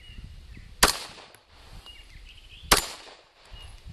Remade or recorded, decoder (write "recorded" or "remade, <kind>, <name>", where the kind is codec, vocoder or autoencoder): recorded